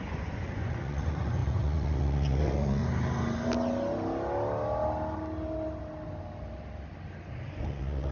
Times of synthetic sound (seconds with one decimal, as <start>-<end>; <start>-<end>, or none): 0.0-2.8; 7.5-8.1